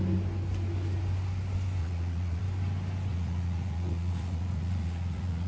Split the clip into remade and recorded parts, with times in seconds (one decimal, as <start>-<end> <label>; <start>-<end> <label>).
0.0-1.8 recorded; 1.8-2.4 remade; 2.4-3.1 recorded; 3.1-5.5 remade